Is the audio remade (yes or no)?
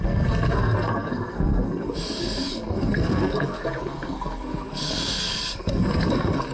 yes